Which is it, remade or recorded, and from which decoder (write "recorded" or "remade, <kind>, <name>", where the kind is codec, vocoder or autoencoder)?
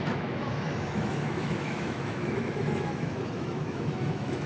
remade, autoencoder, DAC-VAE